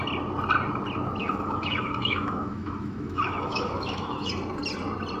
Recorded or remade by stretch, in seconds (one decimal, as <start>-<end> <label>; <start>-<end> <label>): 0.0-1.2 recorded; 1.2-4.3 remade; 4.3-5.2 recorded